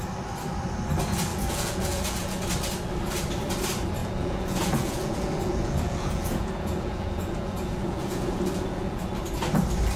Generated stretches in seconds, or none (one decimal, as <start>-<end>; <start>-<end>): 1.3-2.5; 4.0-9.0